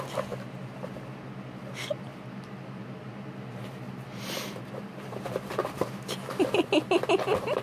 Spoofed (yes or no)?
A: no